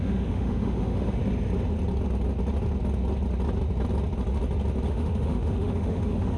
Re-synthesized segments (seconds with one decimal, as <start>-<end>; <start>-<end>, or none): 0.0-1.2; 4.9-6.4